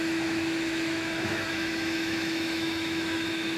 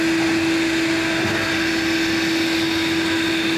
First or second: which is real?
second